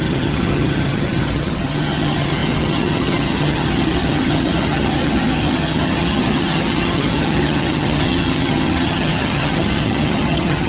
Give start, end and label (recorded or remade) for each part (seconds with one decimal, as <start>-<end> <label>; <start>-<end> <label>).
0.0-10.7 remade